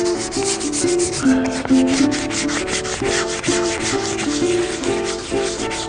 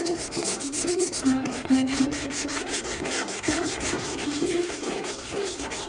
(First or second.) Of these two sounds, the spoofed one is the second